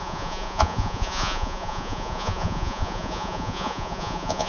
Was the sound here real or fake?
fake